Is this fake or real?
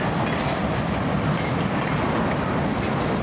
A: real